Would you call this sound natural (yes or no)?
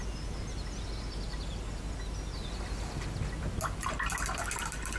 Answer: yes